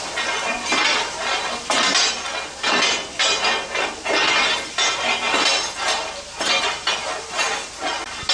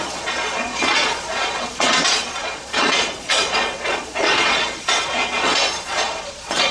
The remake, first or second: second